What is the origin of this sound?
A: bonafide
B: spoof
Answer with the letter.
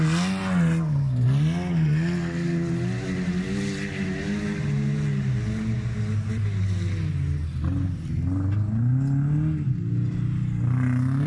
A